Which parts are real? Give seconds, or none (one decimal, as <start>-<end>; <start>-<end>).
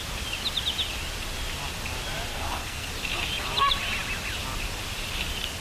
0.0-2.3; 2.9-5.6